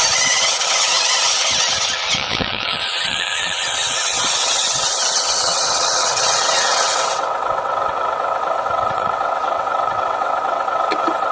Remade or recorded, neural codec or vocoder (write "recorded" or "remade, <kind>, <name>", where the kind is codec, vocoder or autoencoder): remade, vocoder, WaveNeXt